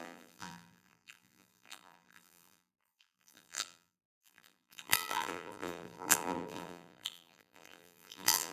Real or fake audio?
fake